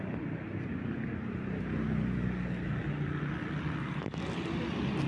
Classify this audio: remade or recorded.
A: recorded